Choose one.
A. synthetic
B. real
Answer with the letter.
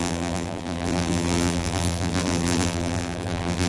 A